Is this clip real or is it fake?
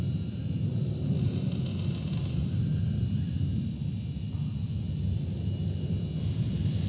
real